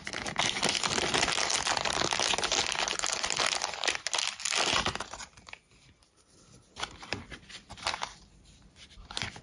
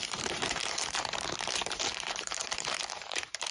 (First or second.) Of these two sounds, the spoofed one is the second